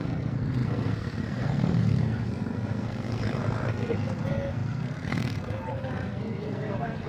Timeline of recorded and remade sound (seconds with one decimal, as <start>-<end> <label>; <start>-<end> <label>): 0.0-7.1 remade